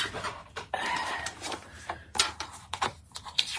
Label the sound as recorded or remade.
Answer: remade